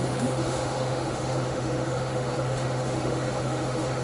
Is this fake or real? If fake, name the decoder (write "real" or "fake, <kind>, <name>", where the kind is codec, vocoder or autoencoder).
fake, autoencoder, DAC-VAE